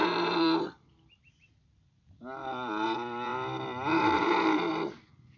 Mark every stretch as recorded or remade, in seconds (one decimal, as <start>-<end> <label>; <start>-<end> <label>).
0.0-5.4 remade